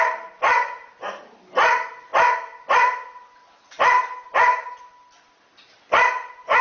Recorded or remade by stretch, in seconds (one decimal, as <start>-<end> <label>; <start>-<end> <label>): 0.0-0.5 recorded; 0.5-1.4 remade; 1.4-6.6 recorded